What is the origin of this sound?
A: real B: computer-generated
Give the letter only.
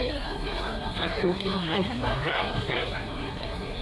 B